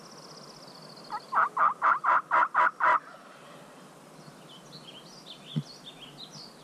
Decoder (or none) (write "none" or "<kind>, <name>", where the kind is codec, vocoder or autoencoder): none